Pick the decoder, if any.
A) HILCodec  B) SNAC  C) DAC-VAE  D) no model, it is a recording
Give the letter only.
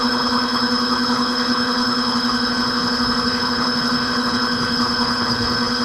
A